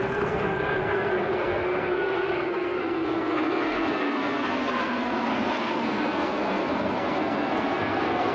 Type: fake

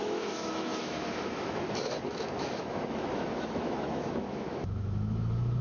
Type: fake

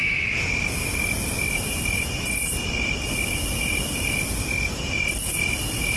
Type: real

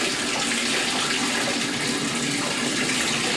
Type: real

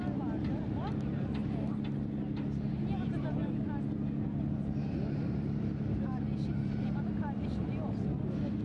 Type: real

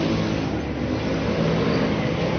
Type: real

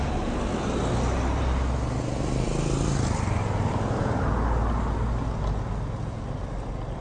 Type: real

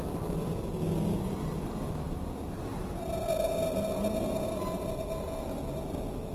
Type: real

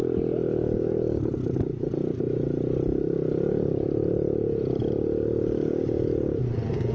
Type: real